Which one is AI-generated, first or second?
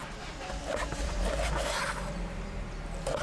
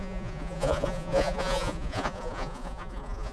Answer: second